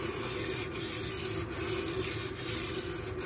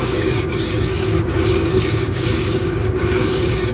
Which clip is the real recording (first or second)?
first